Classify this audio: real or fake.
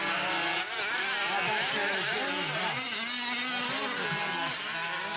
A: real